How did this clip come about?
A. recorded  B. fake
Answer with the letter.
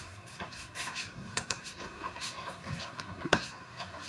B